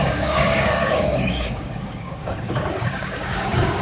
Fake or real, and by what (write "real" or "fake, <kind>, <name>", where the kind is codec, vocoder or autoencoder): fake, codec, DAC